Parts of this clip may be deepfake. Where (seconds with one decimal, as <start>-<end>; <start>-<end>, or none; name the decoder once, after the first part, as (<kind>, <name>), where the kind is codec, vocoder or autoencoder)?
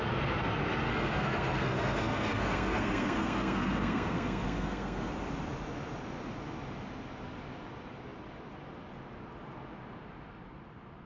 0.9-5.1 (codec, SNAC)